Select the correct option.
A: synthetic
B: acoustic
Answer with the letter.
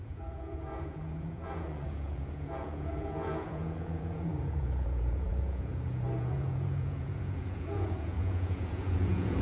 A